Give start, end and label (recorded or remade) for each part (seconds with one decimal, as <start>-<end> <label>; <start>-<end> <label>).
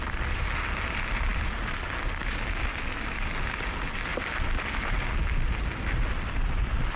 0.0-7.0 recorded